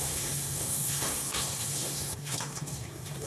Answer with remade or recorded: remade